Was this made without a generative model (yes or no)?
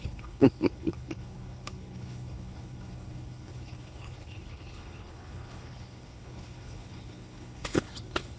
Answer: no